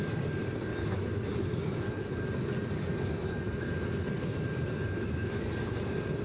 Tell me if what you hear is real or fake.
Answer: real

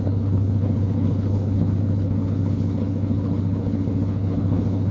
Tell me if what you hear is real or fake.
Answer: fake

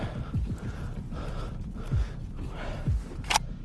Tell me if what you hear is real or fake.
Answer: real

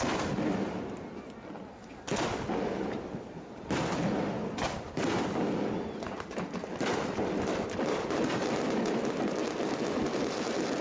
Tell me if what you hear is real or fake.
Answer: real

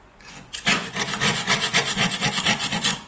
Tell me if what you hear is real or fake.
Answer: fake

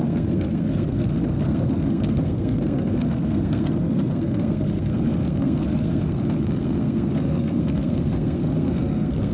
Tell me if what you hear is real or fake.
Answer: fake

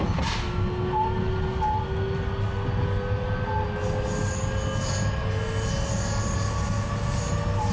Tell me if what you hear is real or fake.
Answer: real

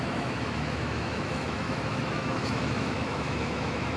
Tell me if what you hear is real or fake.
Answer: fake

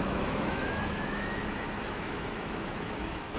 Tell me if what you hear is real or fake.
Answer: fake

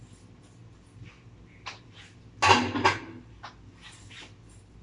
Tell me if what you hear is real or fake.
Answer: real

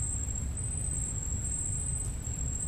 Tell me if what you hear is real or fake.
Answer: real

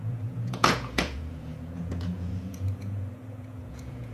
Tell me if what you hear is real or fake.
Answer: fake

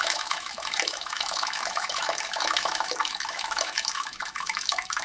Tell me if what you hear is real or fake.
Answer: fake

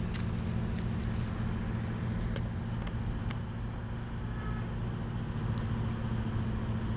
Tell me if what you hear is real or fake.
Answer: real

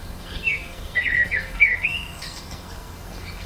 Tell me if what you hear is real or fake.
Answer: fake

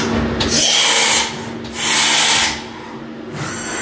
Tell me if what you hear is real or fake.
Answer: real